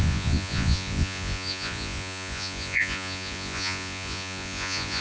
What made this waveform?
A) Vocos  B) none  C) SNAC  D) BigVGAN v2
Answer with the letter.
A